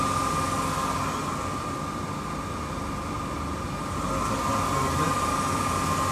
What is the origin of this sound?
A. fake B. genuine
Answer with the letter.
B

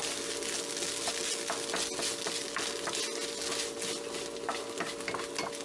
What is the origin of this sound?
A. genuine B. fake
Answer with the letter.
A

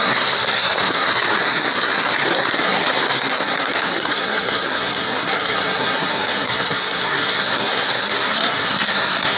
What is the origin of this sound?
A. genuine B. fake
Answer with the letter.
B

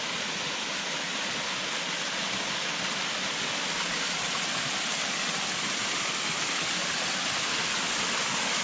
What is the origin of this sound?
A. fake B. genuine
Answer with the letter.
B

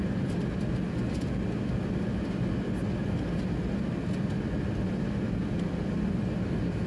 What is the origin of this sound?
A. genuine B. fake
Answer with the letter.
A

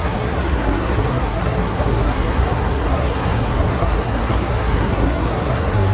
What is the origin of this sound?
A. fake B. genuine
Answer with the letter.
A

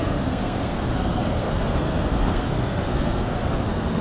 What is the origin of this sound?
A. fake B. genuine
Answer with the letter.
A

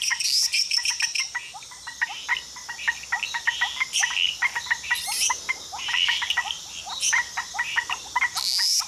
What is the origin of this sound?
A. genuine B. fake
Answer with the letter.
A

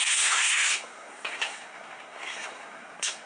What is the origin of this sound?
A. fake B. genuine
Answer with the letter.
A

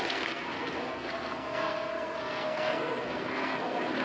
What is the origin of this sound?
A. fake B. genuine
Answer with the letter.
A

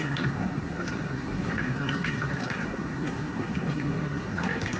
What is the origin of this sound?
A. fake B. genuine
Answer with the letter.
A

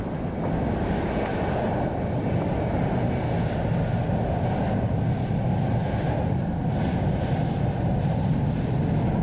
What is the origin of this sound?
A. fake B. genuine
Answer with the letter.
B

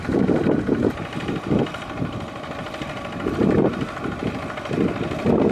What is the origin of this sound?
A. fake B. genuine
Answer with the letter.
B